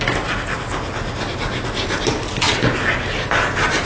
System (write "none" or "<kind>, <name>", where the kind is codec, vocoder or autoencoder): none